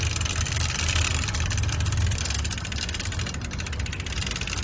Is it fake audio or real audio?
real